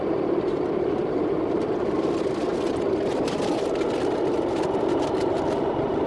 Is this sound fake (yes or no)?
no